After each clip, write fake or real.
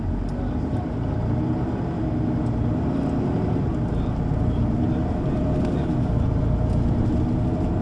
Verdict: real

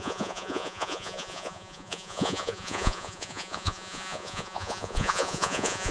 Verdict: fake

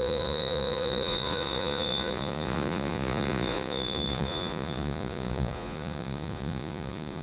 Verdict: fake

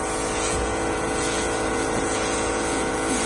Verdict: fake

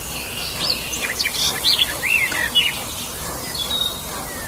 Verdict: real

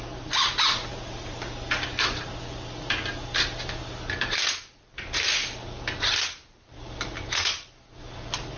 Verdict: real